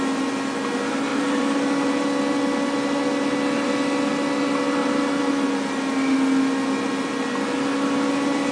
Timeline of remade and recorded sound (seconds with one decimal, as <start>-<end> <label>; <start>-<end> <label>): 0.0-1.1 recorded; 1.1-1.9 remade; 1.9-4.8 recorded; 4.8-5.3 remade; 5.3-8.5 recorded